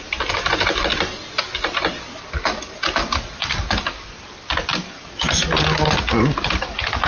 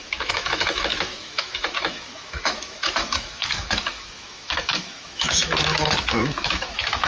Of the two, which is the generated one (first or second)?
second